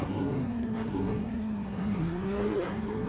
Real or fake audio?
fake